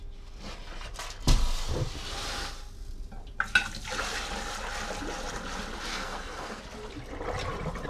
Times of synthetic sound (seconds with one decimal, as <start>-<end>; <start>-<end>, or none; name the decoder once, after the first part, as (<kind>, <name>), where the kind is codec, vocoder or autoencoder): 5.9-6.6 (codec, SNAC)